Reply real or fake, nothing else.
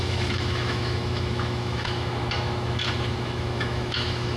fake